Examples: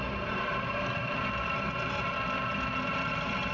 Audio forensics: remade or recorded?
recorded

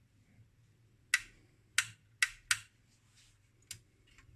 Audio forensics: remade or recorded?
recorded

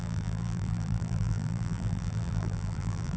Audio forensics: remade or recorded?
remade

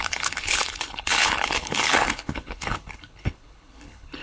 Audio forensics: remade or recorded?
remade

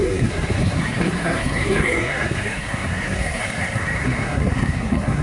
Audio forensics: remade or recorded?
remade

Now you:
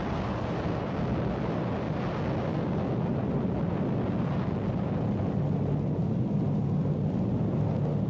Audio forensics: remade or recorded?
recorded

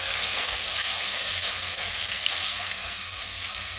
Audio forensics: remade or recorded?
remade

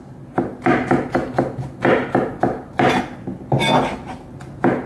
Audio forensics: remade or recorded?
recorded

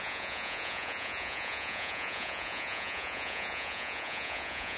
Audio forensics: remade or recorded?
remade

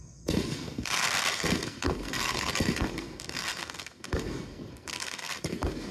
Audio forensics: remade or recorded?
remade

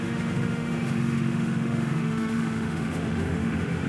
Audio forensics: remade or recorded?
remade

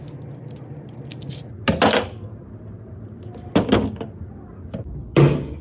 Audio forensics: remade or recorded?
recorded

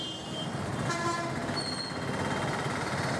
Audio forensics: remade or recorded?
recorded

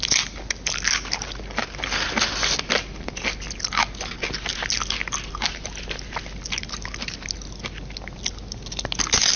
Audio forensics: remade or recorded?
recorded